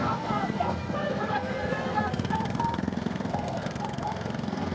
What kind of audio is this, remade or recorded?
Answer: remade